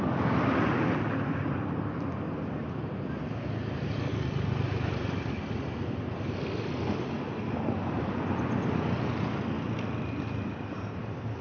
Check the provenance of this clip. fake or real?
real